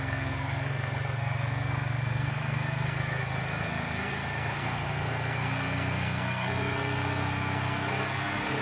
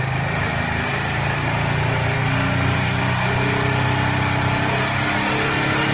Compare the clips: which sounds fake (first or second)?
first